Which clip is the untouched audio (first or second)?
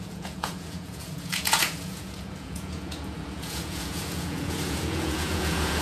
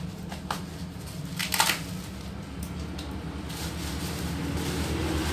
second